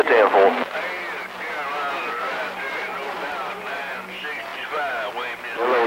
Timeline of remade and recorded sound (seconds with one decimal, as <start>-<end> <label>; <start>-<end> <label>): 0.0-2.0 recorded; 2.0-3.7 remade; 3.7-4.5 recorded; 4.5-5.1 remade; 5.1-5.9 recorded